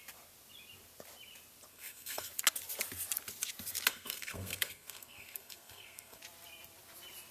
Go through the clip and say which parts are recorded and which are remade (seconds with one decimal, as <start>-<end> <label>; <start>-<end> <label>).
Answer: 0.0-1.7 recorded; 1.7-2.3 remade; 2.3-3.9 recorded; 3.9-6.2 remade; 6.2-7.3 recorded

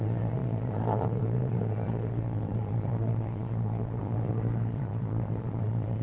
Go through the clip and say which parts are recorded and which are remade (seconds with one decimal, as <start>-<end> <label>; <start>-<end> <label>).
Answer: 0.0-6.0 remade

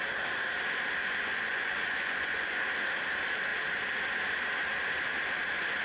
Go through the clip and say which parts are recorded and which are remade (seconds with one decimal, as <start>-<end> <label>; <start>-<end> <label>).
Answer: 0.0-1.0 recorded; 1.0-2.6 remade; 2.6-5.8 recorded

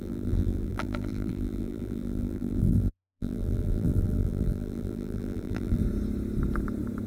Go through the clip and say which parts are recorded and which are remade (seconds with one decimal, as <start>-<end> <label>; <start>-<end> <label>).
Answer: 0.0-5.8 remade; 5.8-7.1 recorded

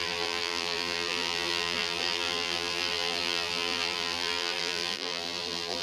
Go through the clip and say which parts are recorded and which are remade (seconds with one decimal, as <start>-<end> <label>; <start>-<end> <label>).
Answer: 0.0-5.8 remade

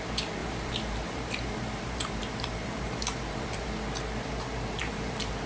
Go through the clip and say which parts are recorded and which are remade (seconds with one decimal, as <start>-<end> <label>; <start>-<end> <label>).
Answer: 0.0-0.4 recorded; 0.4-3.7 remade; 3.7-4.8 recorded; 4.8-5.5 remade